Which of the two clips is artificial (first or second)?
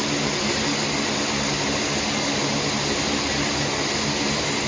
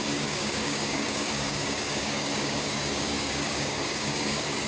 second